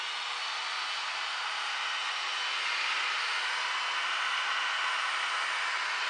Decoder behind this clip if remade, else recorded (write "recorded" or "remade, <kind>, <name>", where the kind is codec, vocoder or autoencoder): recorded